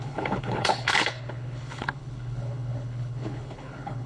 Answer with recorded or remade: remade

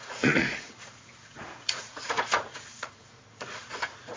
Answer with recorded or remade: remade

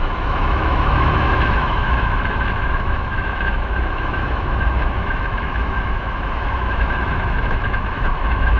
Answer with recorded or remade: remade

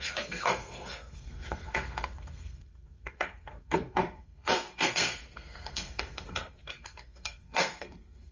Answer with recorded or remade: remade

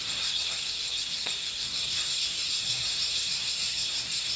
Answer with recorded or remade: remade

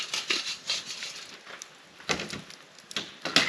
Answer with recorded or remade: recorded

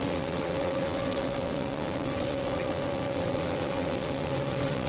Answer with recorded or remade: remade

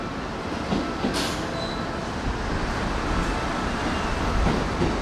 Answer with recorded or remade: recorded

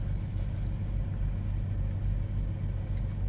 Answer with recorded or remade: recorded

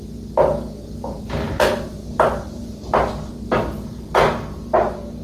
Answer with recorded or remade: recorded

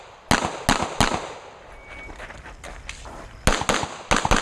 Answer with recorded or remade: recorded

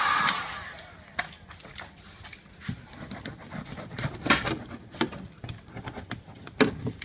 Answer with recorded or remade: recorded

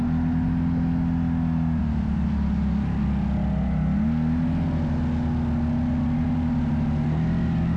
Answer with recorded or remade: recorded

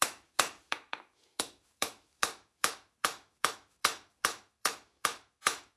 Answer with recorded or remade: remade